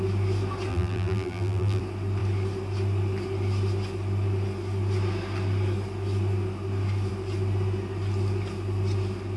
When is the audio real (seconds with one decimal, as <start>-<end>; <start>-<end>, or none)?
0.0-0.7; 1.8-9.4